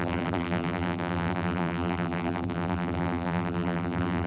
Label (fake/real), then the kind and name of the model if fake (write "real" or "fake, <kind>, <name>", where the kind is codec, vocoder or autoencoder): fake, vocoder, BigVGAN v2